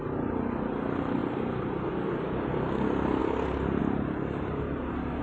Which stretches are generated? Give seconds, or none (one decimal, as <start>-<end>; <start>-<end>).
none